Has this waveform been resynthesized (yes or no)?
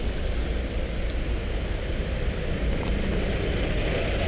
no